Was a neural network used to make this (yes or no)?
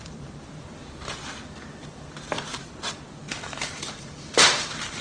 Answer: yes